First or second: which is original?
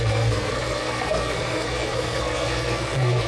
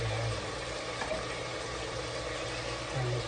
second